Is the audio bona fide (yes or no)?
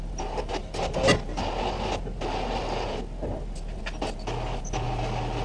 yes